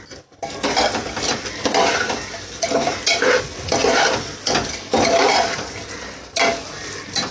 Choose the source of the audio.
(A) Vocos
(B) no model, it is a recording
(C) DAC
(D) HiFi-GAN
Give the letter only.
B